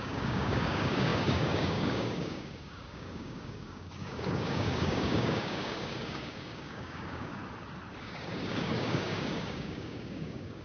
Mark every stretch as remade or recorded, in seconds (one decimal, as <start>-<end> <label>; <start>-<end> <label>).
0.0-7.4 remade; 7.4-8.0 recorded; 8.0-10.6 remade